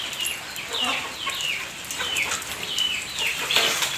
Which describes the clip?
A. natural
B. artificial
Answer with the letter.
B